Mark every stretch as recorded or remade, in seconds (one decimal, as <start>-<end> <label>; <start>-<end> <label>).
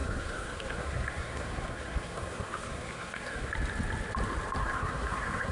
0.0-3.5 remade; 3.5-4.6 recorded; 4.6-5.5 remade